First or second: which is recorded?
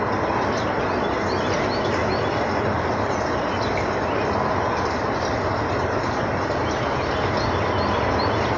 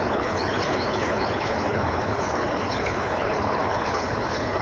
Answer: first